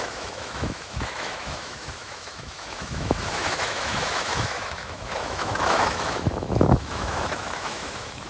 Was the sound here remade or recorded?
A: remade